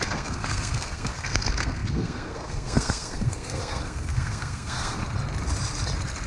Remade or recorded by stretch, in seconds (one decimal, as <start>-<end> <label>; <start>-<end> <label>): 0.0-5.0 remade; 5.0-6.3 recorded